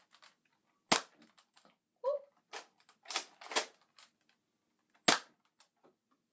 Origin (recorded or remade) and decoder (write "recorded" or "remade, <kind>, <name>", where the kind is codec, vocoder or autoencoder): recorded